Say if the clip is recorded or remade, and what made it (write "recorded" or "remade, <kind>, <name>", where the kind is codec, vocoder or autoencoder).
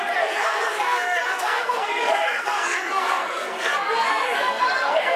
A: remade, codec, SNAC